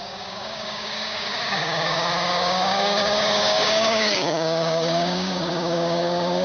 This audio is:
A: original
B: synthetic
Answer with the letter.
B